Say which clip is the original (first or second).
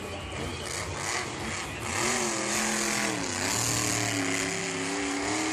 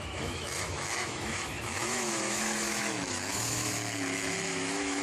first